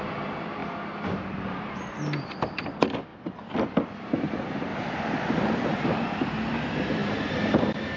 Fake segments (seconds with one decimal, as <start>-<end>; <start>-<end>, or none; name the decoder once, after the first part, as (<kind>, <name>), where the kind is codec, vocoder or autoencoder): 0.0-0.6 (vocoder, BigVGAN v2); 2.2-3.1; 3.8-8.0

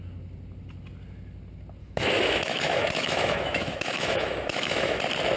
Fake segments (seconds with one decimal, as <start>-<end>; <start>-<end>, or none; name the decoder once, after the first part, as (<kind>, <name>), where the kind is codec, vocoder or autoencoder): 1.8-5.0 (autoencoder, DAC-VAE)

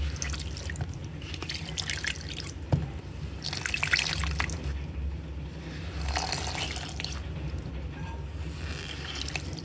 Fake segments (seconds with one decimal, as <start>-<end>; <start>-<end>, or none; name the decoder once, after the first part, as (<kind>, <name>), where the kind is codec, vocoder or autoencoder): none

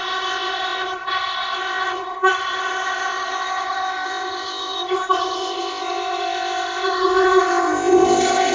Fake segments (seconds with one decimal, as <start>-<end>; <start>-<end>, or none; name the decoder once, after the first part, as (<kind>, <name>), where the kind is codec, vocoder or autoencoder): 0.0-8.5 (codec, ZipCodec)

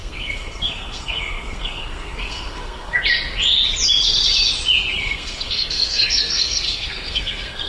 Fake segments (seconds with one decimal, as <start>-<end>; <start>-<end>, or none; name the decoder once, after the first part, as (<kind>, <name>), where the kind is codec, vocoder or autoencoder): 0.0-3.0 (codec, SNAC); 5.0-7.7

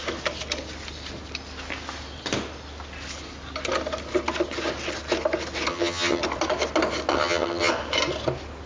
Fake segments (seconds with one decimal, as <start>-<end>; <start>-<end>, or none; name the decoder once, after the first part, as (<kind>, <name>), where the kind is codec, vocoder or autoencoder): 5.7-6.2 (vocoder, HiFi-GAN); 7.1-7.7